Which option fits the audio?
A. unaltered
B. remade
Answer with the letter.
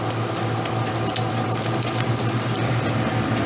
A